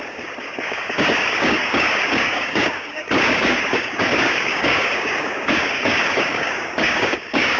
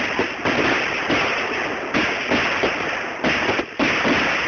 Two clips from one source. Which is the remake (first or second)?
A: first